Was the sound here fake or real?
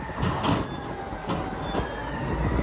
real